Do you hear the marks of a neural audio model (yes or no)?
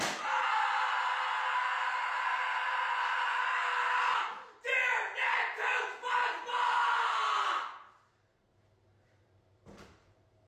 no